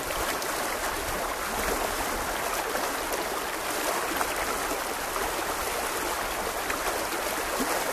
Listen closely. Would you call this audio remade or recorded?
recorded